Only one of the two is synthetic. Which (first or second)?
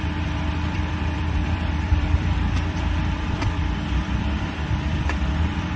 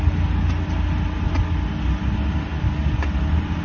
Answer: first